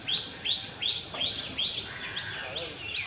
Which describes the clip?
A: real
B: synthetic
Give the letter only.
A